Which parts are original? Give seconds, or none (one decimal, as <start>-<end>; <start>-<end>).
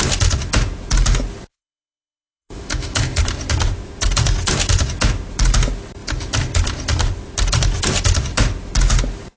0.0-1.5; 3.2-9.4